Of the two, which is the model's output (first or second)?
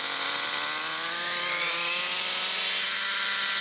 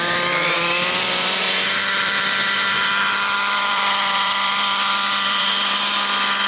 second